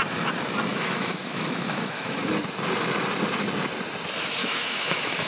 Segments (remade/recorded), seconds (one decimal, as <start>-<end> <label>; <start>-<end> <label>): 0.0-0.7 recorded; 0.7-2.3 remade; 2.3-4.4 recorded; 4.4-5.3 remade